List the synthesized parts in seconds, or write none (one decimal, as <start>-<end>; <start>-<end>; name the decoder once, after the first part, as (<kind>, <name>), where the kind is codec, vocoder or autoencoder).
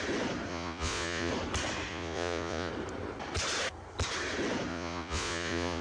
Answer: 0.5-1.3 (vocoder, Vocos); 1.9-2.7; 4.7-5.8